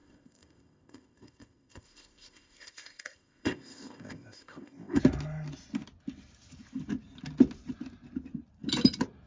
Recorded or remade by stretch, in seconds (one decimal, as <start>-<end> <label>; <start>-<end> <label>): 0.0-5.0 remade; 5.0-9.3 recorded